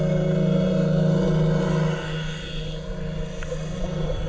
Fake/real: real